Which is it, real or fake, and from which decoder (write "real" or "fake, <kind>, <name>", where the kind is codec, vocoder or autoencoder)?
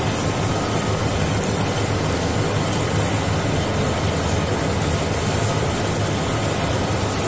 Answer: real